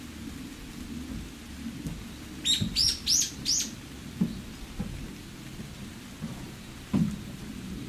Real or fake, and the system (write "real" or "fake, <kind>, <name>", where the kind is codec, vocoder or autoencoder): real